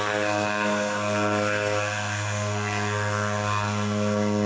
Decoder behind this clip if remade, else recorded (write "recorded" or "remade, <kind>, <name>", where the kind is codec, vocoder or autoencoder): remade, codec, SNAC